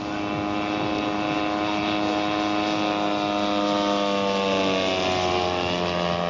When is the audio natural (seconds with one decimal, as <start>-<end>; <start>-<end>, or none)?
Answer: 0.0-6.3